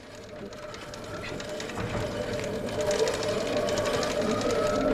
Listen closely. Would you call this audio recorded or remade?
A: recorded